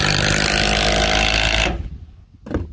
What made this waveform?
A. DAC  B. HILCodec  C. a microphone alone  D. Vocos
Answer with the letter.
C